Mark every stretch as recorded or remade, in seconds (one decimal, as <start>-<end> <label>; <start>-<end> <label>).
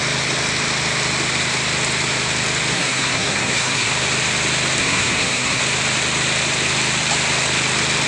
0.0-2.7 recorded; 2.7-3.9 remade; 3.9-4.8 recorded; 4.8-5.6 remade; 5.6-8.1 recorded